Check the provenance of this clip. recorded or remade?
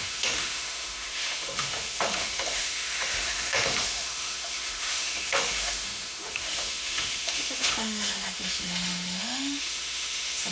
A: remade